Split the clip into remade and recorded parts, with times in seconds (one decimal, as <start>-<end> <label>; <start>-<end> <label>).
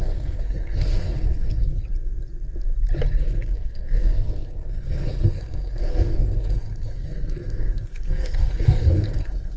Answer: 0.0-1.8 remade; 1.8-3.2 recorded; 3.2-9.6 remade